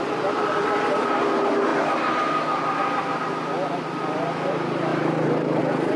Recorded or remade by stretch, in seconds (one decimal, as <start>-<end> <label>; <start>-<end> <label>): 0.0-4.9 recorded; 4.9-5.6 remade; 5.6-6.0 recorded